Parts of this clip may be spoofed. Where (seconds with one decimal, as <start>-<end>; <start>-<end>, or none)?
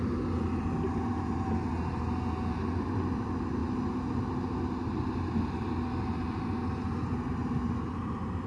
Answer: none